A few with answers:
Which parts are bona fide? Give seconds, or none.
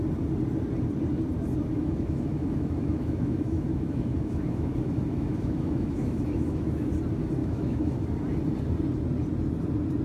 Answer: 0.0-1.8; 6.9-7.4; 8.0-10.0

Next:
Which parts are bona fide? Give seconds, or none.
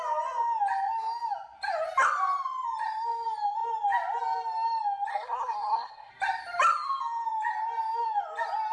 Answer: 0.0-5.1; 6.1-8.7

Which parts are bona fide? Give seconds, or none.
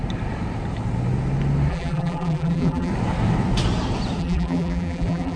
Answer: 0.0-1.7; 2.9-4.2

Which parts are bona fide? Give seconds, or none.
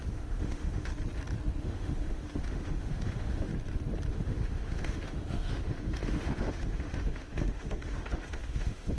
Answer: 0.9-1.6; 3.5-4.1